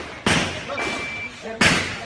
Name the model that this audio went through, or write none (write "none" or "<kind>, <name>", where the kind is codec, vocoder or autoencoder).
none